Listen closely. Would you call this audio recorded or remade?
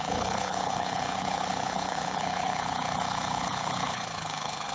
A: remade